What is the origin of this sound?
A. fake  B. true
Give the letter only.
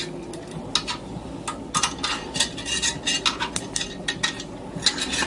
B